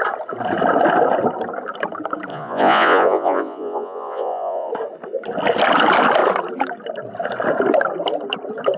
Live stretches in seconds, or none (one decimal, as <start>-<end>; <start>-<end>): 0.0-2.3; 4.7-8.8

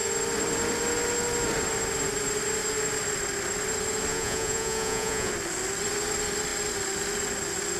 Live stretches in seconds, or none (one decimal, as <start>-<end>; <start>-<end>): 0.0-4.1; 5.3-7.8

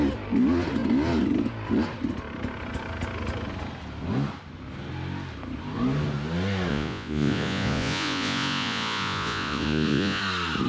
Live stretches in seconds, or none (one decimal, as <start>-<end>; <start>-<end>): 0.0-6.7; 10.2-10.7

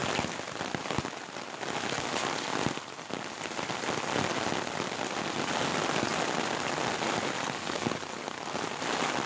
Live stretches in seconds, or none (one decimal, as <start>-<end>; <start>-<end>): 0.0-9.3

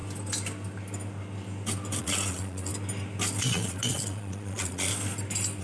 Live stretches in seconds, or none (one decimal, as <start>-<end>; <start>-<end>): 0.0-2.0; 2.7-3.4; 4.9-5.6

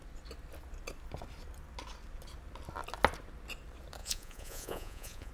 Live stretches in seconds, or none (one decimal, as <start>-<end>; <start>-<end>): 0.0-4.0